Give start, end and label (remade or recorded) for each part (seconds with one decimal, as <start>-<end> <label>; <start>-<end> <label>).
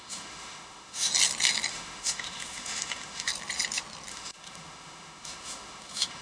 0.0-1.1 remade; 1.1-1.7 recorded; 1.7-3.3 remade; 3.3-4.1 recorded; 4.1-6.2 remade